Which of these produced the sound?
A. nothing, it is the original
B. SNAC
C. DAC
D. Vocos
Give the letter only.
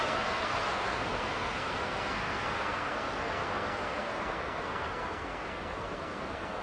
B